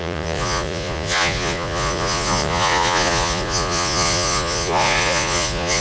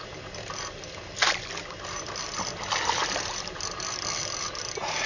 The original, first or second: second